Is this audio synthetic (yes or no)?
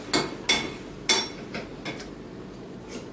no